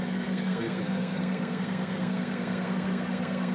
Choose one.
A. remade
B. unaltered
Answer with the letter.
A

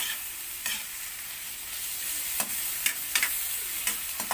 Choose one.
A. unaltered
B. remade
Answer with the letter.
A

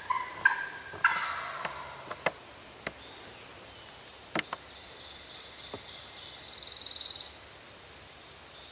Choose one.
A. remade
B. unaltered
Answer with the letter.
B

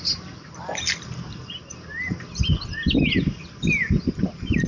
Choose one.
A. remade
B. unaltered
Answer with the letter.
B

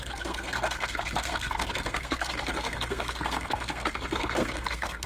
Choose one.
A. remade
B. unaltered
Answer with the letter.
A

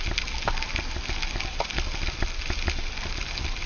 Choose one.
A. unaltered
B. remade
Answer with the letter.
A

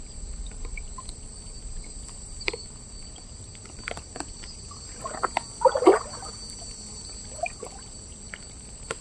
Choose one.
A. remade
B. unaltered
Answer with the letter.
B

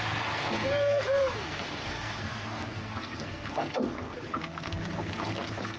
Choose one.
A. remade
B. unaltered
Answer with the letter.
A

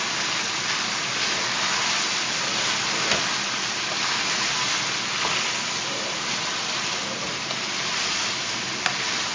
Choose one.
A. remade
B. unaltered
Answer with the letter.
B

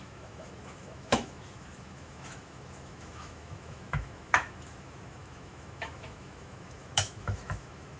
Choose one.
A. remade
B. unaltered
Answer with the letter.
A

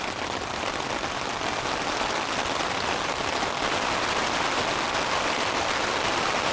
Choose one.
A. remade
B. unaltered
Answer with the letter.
B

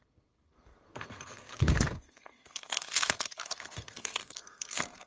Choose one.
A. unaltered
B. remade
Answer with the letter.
B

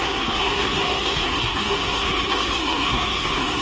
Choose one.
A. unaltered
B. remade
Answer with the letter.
B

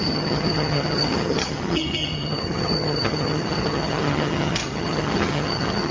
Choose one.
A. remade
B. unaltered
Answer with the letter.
A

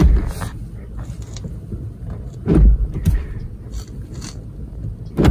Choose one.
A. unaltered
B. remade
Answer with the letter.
A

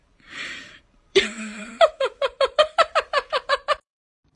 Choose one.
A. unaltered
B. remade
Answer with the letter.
B